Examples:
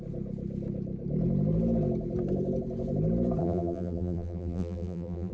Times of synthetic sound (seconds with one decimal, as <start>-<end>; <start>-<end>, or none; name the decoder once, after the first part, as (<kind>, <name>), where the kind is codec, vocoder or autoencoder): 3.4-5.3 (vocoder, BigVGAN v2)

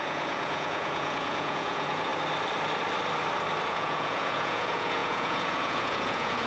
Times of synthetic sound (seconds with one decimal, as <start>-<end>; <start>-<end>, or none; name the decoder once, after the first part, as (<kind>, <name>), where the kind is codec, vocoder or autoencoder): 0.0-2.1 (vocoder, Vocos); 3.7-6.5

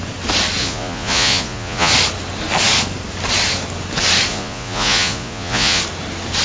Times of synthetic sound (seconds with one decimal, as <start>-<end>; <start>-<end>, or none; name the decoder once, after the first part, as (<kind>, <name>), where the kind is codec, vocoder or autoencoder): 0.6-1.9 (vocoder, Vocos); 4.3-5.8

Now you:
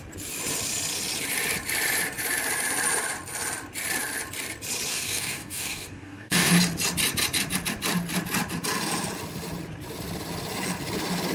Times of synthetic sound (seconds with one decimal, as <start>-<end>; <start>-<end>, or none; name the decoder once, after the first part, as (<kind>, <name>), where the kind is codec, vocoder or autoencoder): 4.9-6.5 (codec, DAC)